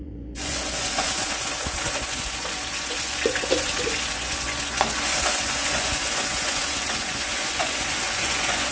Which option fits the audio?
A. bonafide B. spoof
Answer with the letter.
B